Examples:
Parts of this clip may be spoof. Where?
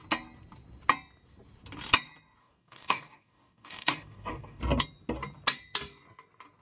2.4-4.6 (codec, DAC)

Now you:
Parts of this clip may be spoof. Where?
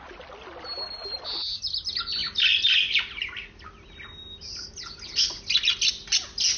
none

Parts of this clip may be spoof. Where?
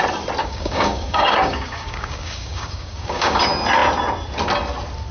0.4-3.4 (codec, DAC)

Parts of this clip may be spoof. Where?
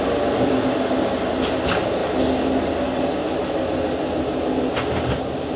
none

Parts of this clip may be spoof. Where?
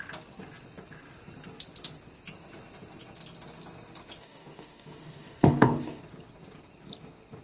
4.2-6.0 (codec, DAC)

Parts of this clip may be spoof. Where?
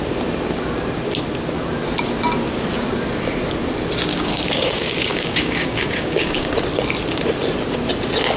4.1-6.5 (codec, DAC)